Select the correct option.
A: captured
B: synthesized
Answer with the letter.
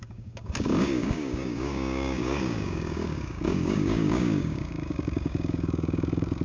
B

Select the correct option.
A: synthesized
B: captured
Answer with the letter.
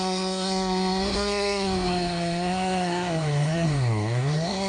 A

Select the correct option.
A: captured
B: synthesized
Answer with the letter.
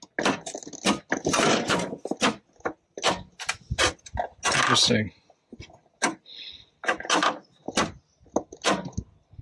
A